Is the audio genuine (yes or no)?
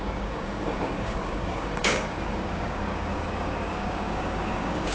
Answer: no